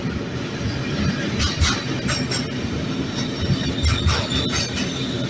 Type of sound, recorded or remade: recorded